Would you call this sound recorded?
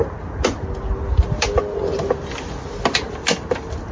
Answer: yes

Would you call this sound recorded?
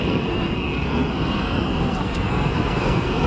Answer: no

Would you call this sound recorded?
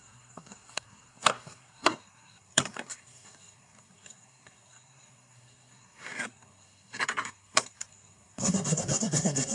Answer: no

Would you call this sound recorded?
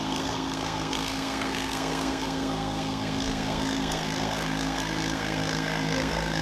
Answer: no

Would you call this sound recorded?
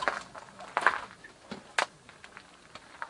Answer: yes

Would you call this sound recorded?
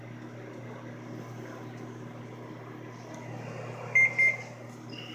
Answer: yes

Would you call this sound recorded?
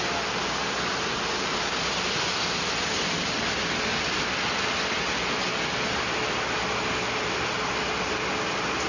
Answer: yes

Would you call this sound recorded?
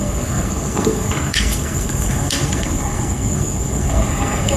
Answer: no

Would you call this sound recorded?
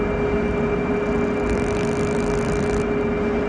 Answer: yes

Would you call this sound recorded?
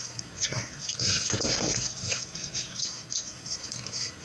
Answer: no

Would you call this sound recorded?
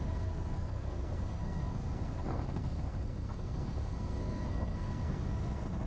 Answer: no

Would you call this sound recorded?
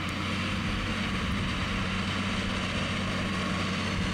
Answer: yes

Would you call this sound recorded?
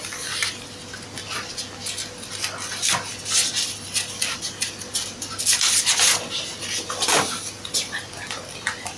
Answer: yes